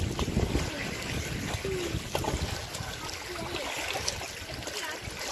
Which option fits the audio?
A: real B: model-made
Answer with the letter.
A